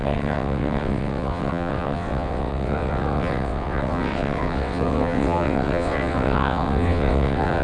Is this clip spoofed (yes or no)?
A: yes